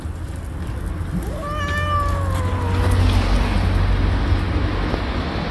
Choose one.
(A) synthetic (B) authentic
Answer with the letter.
B